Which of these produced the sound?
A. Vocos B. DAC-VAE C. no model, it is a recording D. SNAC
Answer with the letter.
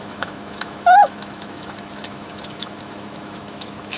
B